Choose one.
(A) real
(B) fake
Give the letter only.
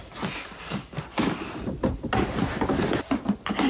A